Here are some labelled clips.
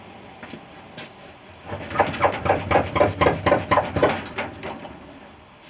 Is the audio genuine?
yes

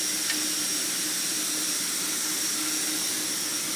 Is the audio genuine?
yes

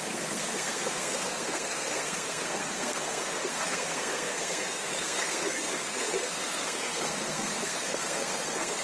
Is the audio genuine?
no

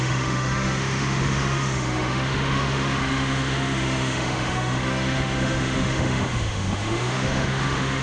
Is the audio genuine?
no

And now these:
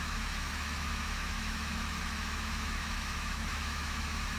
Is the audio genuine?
no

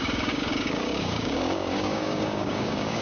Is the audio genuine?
no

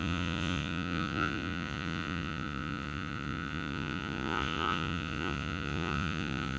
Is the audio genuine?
no